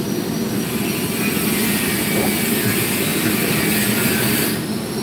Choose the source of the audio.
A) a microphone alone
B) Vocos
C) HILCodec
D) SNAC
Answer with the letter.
A